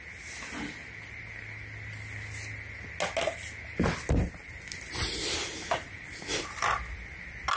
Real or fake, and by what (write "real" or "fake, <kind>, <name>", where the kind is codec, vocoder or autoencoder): real